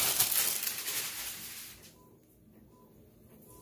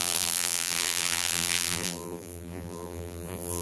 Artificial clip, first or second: second